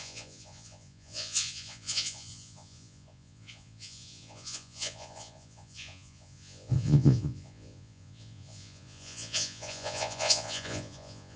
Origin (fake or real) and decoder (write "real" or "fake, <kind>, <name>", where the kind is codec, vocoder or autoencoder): fake, vocoder, Vocos